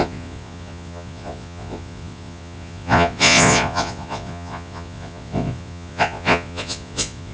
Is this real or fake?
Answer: fake